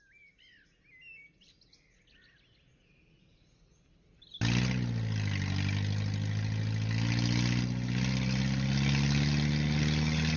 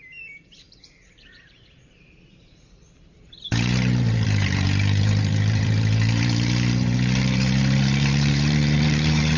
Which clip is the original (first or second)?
first